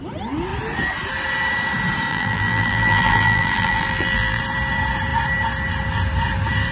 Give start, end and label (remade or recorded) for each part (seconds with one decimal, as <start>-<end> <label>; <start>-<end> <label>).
0.0-2.1 recorded; 2.1-4.4 remade; 4.4-6.7 recorded